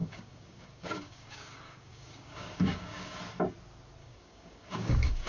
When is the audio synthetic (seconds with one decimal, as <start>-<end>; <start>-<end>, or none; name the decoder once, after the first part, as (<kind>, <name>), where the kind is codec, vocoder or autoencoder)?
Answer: 0.0-3.2 (codec, DAC); 4.0-5.3